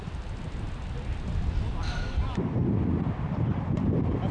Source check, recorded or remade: recorded